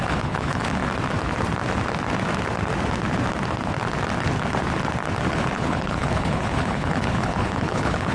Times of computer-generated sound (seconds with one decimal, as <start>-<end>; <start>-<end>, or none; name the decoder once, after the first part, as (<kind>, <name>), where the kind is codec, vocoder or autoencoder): 0.0-0.8 (codec, HILCodec); 5.3-8.1